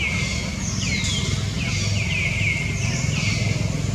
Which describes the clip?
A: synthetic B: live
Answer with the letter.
B